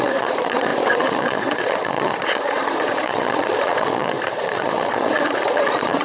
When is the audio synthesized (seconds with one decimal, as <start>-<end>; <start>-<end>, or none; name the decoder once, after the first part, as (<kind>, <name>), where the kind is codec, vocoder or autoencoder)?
0.0-6.0 (vocoder, Vocos)